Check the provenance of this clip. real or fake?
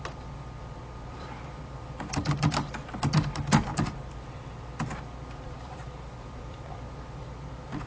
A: fake